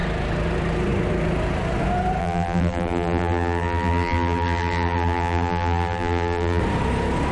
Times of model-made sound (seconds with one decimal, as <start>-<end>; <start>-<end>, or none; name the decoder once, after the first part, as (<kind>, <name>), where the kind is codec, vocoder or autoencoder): 2.2-6.6 (vocoder, BigVGAN v2)